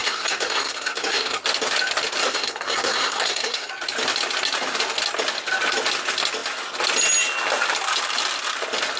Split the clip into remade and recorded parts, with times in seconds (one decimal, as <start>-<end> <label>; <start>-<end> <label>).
0.0-1.4 remade; 1.4-2.2 recorded; 2.2-3.7 remade; 3.7-9.0 recorded